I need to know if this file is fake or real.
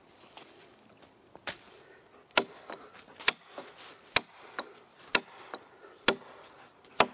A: real